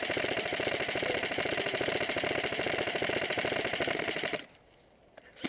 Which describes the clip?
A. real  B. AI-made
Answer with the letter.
A